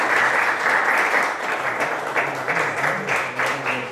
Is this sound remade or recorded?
recorded